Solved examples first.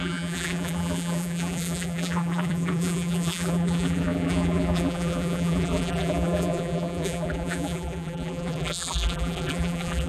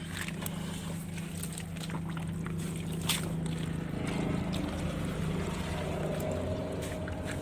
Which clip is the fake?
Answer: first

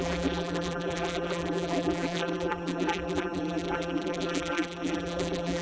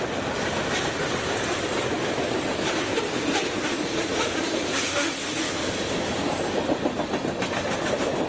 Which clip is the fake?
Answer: first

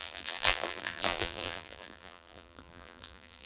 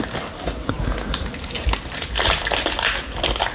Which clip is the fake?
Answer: first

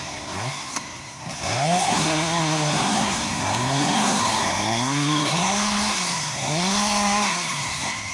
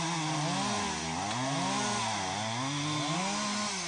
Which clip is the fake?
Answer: first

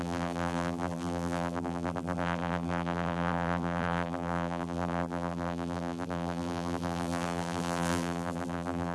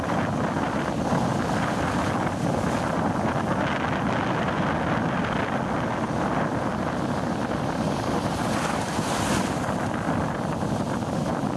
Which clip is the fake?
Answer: first